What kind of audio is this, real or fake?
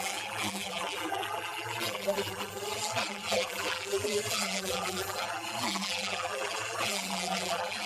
fake